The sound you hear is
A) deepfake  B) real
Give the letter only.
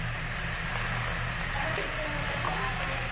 B